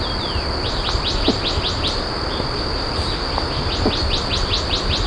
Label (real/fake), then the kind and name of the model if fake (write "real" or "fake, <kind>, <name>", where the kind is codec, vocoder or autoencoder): real